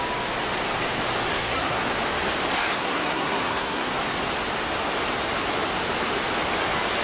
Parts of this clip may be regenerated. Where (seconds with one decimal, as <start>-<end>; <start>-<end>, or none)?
1.3-1.8; 2.7-3.9